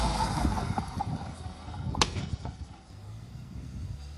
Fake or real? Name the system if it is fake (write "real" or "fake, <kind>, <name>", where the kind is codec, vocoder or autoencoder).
fake, codec, SNAC